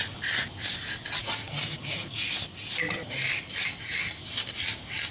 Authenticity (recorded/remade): recorded